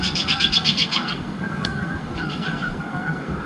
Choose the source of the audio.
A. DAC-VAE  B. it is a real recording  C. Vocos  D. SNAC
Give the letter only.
D